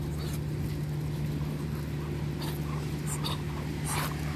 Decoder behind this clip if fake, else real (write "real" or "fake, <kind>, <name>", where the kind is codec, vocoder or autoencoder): real